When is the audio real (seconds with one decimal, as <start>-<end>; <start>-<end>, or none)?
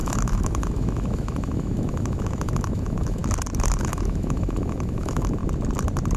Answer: 3.2-3.8; 5.4-6.2